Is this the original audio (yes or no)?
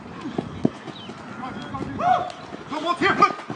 yes